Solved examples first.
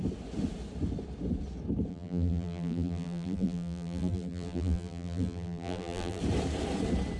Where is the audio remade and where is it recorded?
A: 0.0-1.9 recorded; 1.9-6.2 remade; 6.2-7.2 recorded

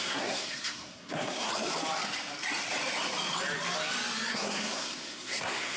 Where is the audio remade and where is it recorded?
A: 0.0-1.5 remade; 1.5-4.3 recorded; 4.3-5.8 remade

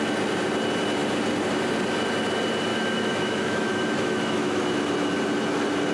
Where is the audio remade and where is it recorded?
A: 0.0-2.7 recorded; 2.7-4.6 remade; 4.6-5.9 recorded

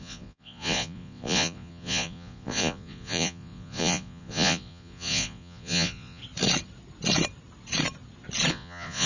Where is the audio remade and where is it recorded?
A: 0.0-6.2 remade; 6.2-8.5 recorded; 8.5-9.1 remade

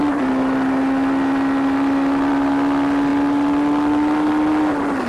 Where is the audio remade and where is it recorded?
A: 0.0-5.1 recorded

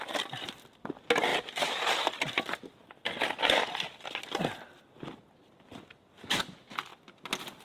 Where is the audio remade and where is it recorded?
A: 0.0-7.6 recorded

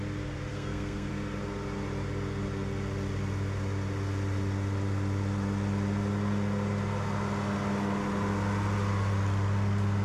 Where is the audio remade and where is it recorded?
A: 0.0-0.5 recorded; 0.5-1.1 remade; 1.1-10.0 recorded